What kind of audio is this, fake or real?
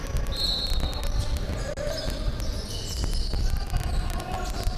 real